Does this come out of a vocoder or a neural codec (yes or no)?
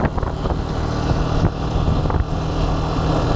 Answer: no